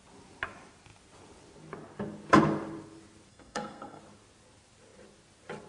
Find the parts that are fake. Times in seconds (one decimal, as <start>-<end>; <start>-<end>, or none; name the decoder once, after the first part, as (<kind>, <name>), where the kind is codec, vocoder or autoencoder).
3.3-4.0 (codec, SNAC)